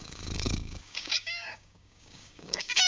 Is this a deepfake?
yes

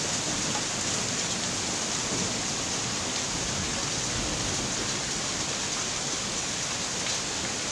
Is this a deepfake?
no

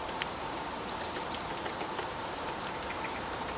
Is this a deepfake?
yes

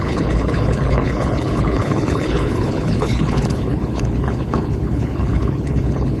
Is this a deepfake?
yes